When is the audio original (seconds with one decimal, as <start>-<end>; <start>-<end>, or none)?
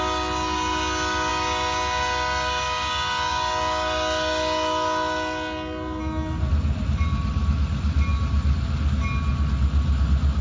0.0-10.4